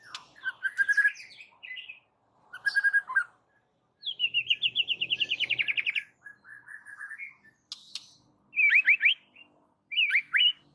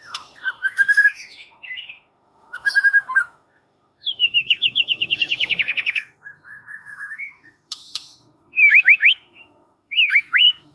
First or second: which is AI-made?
second